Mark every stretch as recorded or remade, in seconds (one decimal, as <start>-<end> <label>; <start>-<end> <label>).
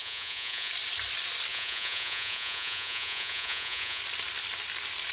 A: 0.0-0.7 remade; 0.7-1.5 recorded; 1.5-4.0 remade; 4.0-5.1 recorded